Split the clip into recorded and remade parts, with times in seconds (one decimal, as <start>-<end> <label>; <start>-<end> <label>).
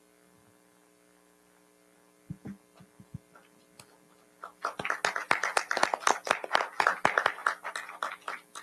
0.0-8.6 recorded